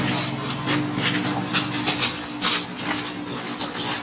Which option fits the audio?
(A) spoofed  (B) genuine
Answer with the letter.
B